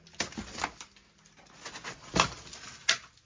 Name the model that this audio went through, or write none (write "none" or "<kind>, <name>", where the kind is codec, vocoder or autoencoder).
none